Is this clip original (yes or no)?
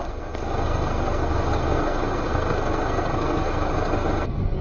no